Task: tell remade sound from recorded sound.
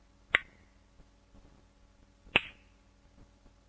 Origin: recorded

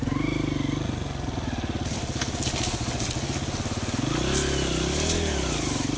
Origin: recorded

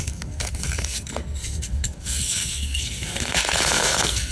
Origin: remade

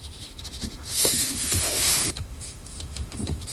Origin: remade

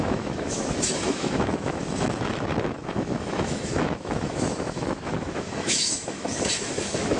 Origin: remade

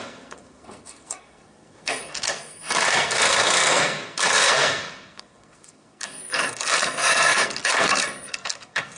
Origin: remade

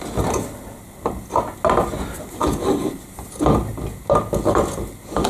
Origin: recorded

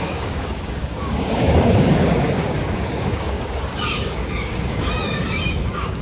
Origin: remade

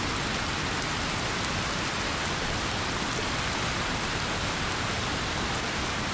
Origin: recorded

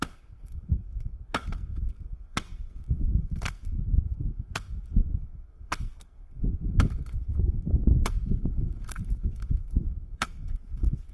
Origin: remade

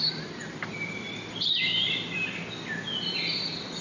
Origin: remade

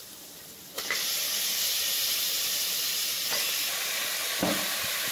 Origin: recorded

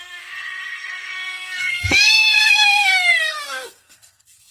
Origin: remade